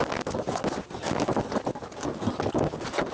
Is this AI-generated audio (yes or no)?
no